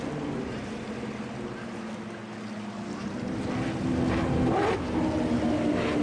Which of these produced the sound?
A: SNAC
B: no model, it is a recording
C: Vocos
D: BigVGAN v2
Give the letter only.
B